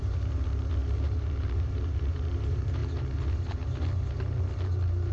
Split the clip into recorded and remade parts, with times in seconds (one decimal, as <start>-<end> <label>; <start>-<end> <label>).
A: 0.0-2.8 remade; 2.8-5.1 recorded